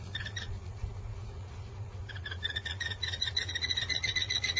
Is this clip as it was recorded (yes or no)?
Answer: no